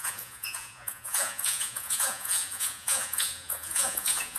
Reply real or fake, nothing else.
fake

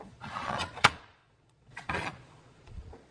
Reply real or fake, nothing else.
fake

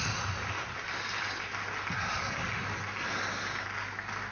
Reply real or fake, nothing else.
real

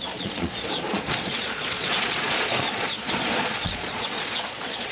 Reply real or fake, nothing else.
fake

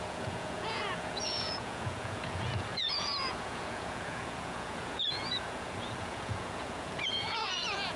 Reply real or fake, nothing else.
fake